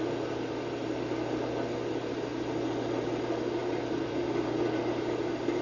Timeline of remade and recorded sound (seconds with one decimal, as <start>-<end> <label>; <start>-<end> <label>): 0.0-3.6 recorded; 3.6-4.2 remade; 4.2-5.6 recorded